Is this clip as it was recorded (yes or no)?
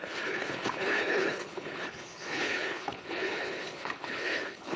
no